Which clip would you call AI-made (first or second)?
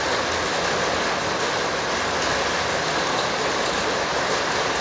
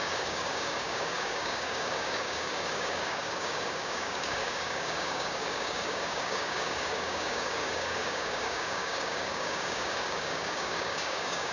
second